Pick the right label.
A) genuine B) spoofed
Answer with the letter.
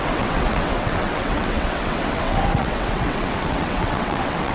B